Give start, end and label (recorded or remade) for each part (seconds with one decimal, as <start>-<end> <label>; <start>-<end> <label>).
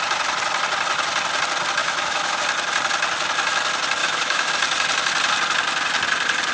0.0-1.8 recorded; 1.8-2.4 remade; 2.4-4.0 recorded; 4.0-4.5 remade; 4.5-6.5 recorded